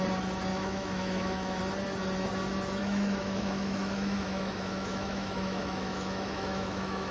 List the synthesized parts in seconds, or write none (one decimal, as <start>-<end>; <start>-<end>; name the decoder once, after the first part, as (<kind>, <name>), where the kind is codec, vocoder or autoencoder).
0.5-1.6 (autoencoder, DAC-VAE); 2.8-7.1